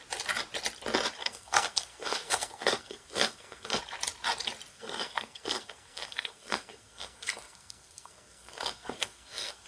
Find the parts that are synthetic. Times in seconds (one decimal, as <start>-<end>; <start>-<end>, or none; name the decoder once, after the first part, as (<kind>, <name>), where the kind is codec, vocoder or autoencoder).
1.2-3.8 (codec, SNAC); 4.7-9.7

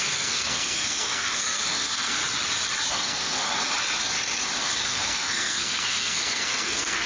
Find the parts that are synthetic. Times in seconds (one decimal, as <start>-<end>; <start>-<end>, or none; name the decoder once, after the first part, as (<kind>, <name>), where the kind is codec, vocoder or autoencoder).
0.0-2.2 (codec, SNAC); 2.9-3.5; 4.6-7.1

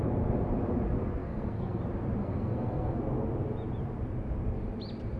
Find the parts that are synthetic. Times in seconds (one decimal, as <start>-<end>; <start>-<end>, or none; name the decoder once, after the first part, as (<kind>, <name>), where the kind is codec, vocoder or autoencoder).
1.2-1.8 (codec, SNAC); 2.2-3.0

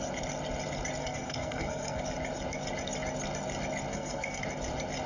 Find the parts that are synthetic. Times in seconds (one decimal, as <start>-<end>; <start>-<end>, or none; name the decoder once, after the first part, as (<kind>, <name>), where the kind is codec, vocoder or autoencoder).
1.0-2.0 (codec, SNAC); 3.9-4.4

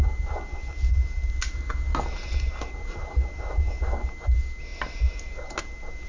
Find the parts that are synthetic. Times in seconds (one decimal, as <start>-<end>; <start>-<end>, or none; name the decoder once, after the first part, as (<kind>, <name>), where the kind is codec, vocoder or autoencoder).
none

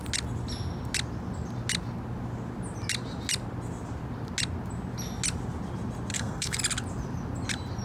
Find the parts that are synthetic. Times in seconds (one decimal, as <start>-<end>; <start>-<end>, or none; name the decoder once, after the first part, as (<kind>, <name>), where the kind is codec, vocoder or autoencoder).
6.1-6.6 (codec, SNAC)